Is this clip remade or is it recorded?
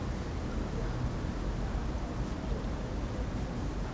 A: recorded